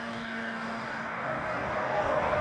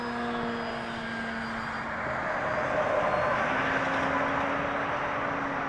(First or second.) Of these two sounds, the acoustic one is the second